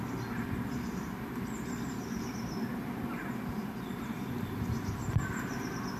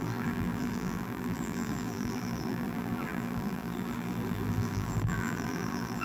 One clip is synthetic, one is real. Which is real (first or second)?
first